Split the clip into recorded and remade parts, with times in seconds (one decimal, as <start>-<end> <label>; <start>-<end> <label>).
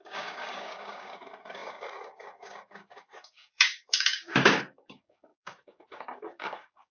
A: 0.0-6.9 remade